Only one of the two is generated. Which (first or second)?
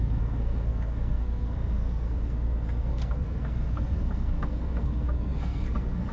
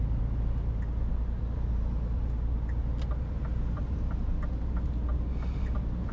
first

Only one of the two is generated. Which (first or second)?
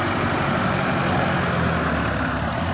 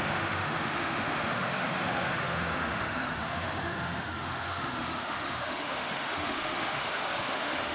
second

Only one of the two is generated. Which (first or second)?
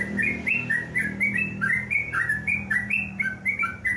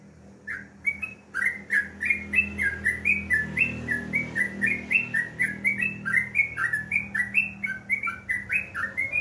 first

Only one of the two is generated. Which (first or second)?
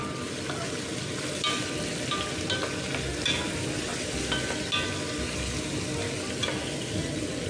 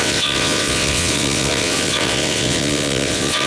second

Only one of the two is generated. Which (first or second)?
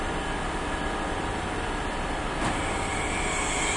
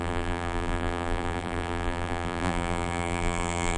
second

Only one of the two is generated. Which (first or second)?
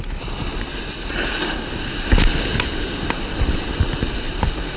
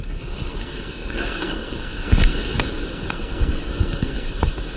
second